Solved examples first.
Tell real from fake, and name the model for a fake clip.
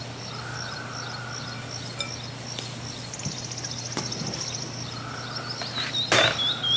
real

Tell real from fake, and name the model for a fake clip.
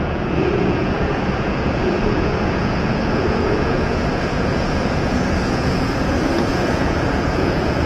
fake, vocoder, Vocos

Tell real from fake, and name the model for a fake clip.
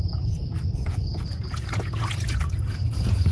fake, vocoder, Vocos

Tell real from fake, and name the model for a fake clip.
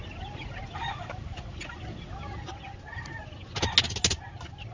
real